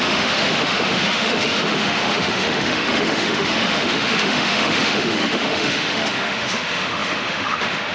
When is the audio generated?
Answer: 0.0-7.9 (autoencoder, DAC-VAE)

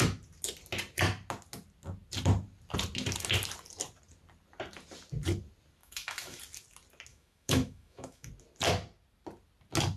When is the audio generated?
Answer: 5.8-6.4 (autoencoder, DAC-VAE); 7.1-8.3

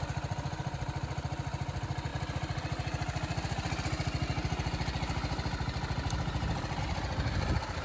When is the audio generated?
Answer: none

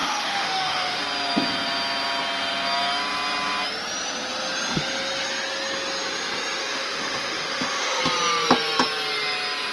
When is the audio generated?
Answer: 0.0-1.0 (autoencoder, DAC-VAE); 6.6-8.0